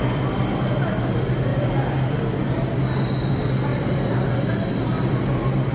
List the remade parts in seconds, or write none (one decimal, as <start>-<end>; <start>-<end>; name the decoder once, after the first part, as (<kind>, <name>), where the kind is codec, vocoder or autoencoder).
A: none